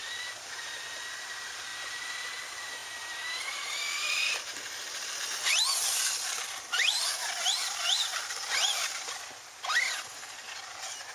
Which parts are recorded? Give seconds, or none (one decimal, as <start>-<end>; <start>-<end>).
0.0-1.7; 2.3-8.1; 10.3-11.1